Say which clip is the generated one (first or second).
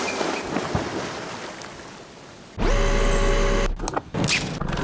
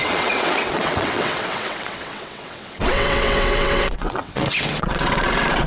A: second